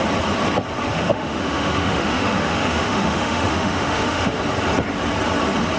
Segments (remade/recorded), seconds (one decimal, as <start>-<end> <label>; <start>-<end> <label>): 0.0-0.9 recorded; 0.9-4.4 remade; 4.4-5.8 recorded